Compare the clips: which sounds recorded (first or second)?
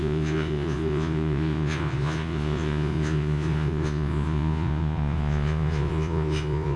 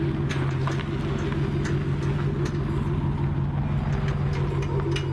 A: second